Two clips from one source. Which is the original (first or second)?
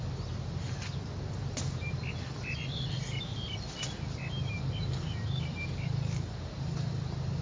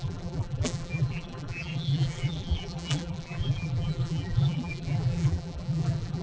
first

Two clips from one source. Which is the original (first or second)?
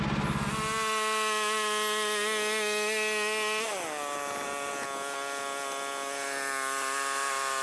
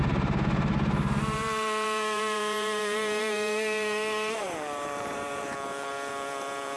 first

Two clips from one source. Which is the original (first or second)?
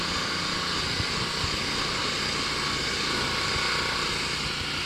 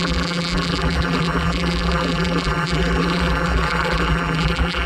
first